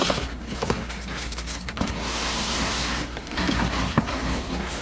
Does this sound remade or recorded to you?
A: remade